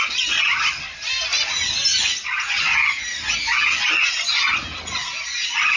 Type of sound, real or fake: real